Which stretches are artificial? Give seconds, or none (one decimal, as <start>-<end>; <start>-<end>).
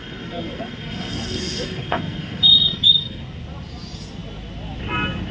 0.0-3.2